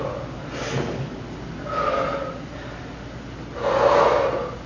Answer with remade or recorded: recorded